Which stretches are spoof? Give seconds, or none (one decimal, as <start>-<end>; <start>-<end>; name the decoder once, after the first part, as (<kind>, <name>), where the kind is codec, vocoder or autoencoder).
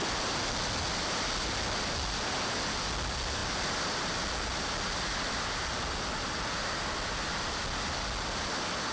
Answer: none